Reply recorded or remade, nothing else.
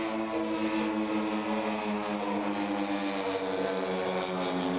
recorded